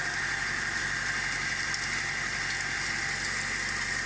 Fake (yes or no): no